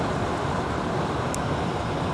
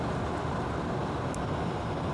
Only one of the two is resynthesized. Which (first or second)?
first